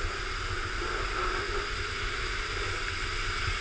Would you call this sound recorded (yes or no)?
yes